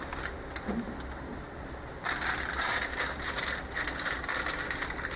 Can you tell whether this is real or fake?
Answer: real